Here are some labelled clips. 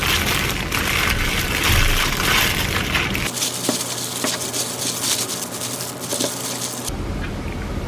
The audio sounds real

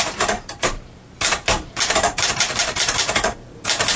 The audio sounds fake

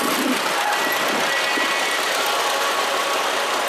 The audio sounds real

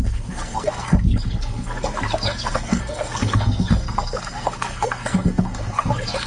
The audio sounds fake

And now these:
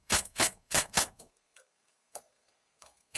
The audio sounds fake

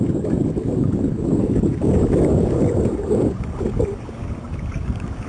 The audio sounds fake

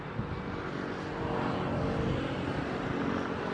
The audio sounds real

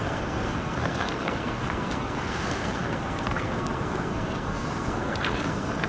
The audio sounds fake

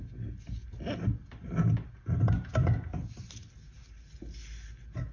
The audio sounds real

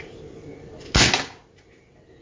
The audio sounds real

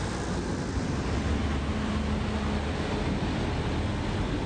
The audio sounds real